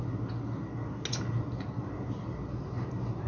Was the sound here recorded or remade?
recorded